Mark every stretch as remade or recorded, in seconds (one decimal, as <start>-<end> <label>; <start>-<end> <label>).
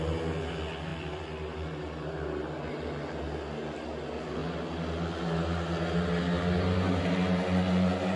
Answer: 0.0-8.2 recorded